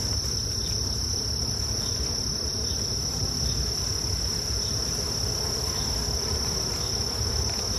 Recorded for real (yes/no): yes